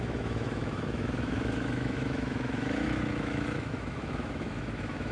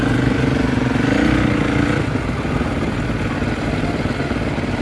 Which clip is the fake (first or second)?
first